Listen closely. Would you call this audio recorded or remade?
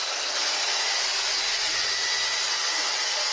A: recorded